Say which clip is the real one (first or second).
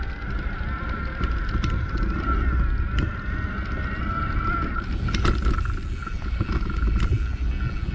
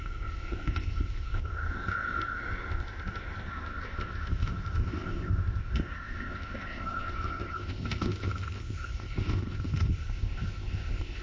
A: first